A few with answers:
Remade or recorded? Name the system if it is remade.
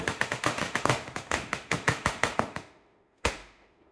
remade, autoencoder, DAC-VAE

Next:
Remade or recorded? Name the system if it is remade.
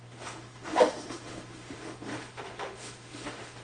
remade, autoencoder, DAC-VAE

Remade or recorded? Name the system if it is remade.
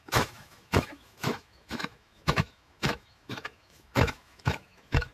remade, autoencoder, DAC-VAE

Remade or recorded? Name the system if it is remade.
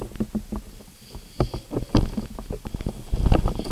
recorded